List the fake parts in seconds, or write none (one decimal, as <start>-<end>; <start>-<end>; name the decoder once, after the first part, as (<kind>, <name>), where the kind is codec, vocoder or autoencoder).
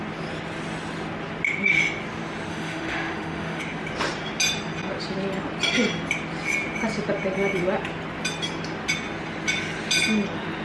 2.5-3.6 (autoencoder, DAC-VAE)